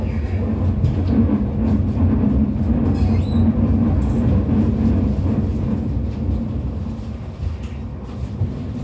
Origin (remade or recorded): recorded